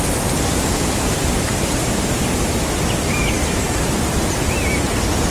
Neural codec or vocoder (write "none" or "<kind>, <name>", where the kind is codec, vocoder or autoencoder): none